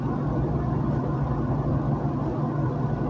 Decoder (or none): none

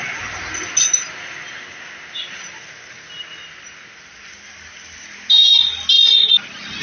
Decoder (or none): none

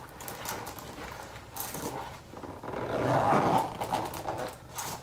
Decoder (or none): none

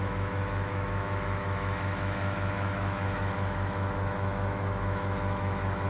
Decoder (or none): autoencoder, DAC-VAE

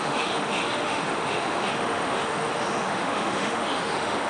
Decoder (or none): autoencoder, DAC-VAE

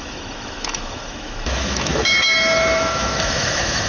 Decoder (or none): autoencoder, DAC-VAE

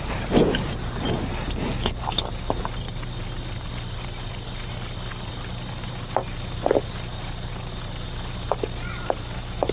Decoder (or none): none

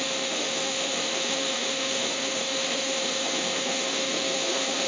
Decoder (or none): autoencoder, DAC-VAE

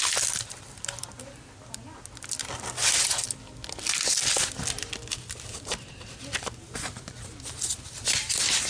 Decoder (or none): none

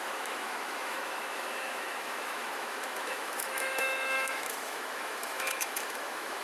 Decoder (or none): autoencoder, DAC-VAE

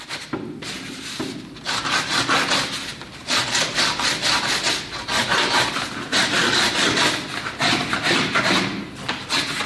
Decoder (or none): none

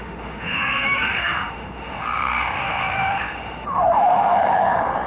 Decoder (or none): autoencoder, DAC-VAE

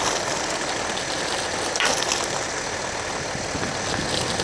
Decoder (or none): none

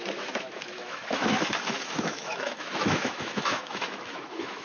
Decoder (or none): autoencoder, DAC-VAE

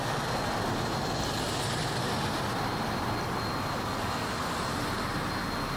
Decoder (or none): none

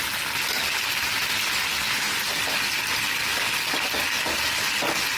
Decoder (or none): none